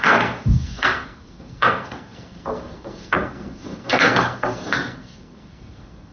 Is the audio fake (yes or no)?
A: yes